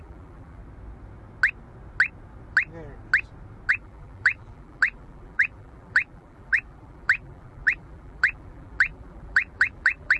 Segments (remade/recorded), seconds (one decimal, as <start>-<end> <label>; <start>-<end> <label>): 0.0-0.6 remade; 0.6-3.7 recorded; 3.7-10.2 remade